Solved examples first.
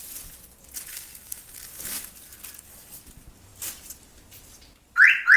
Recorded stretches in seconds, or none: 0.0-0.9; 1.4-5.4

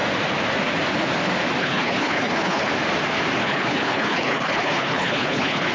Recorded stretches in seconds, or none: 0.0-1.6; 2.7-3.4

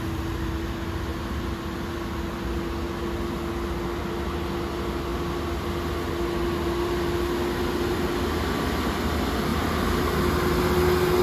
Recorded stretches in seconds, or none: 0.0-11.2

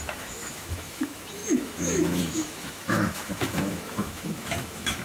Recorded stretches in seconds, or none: none

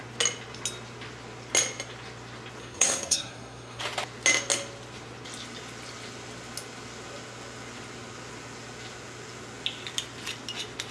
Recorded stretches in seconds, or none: 0.0-2.6; 3.8-10.9